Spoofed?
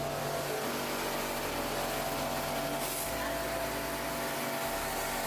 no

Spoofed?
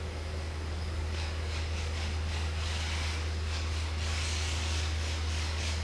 yes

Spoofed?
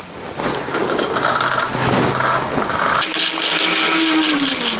no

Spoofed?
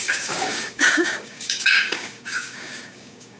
yes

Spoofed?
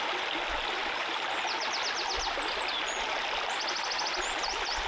no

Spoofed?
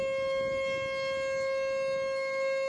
no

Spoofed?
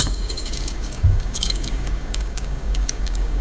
yes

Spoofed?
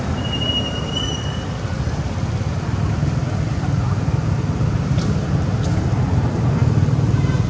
no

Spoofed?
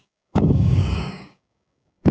yes